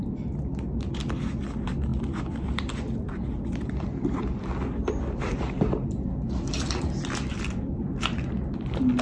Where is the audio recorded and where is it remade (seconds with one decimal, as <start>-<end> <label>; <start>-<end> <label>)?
0.0-9.0 recorded